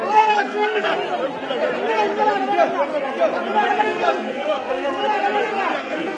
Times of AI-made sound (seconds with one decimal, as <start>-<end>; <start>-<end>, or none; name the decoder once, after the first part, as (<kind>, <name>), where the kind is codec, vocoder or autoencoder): 0.0-0.9 (codec, SNAC); 3.8-5.0; 5.8-6.2

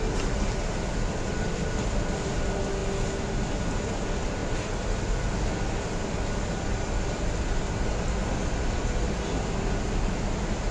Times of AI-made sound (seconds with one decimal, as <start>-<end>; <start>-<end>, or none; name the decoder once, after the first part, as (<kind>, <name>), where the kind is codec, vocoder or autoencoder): none

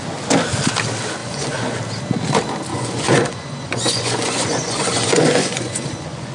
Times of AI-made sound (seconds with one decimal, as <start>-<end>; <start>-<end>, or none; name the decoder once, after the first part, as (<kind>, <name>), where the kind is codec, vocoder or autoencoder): 1.2-1.8 (vocoder, Vocos); 2.7-6.3

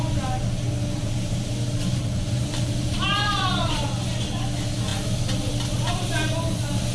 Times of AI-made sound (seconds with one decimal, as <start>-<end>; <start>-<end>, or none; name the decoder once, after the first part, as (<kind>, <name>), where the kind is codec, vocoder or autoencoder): 1.9-3.8 (vocoder, BigVGAN v2)